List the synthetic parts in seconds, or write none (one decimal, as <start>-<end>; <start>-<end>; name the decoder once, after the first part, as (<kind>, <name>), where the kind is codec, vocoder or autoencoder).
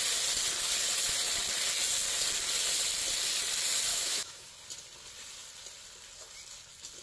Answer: 3.9-4.5 (autoencoder, DAC-VAE)